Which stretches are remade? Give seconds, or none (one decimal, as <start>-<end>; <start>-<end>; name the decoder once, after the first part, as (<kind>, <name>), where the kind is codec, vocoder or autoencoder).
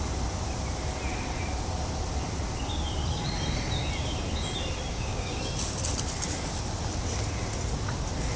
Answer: 4.9-5.4 (codec, DAC)